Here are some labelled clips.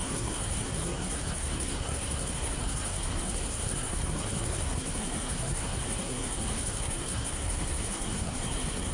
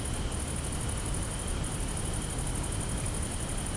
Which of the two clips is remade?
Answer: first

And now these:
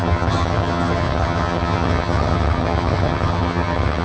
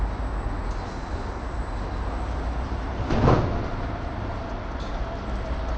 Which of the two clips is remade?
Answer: first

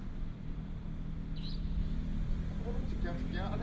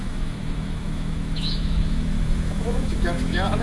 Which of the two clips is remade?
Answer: second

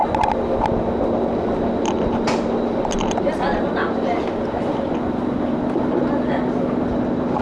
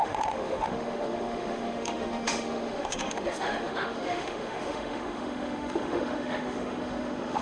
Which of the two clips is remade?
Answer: second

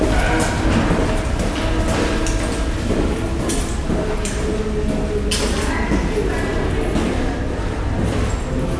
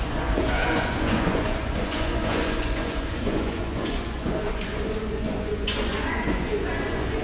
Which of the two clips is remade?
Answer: second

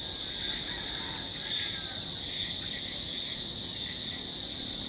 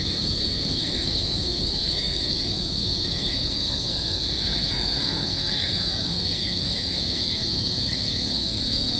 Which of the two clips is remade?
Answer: second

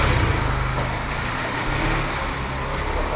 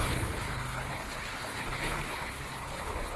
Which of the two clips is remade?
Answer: second